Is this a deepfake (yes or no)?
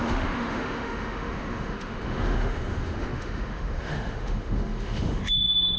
yes